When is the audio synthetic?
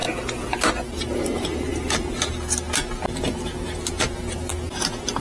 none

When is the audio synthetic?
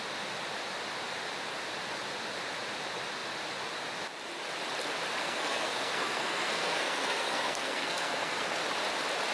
5.2-8.6 (codec, SNAC)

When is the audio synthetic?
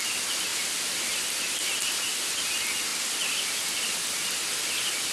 none